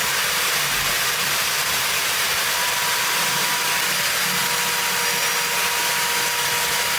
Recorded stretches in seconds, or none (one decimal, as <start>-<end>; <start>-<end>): 3.5-7.0